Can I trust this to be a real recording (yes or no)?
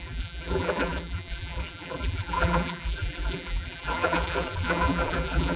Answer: no